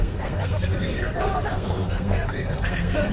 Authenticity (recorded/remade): remade